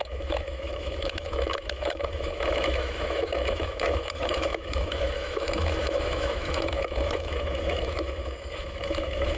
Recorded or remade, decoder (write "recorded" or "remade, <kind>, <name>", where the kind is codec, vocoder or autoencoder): remade, autoencoder, DAC-VAE